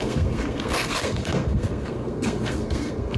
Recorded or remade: remade